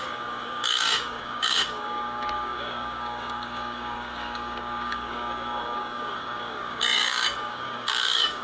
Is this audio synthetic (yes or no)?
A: yes